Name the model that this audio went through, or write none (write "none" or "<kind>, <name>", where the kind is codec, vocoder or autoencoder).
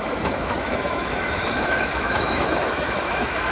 autoencoder, DAC-VAE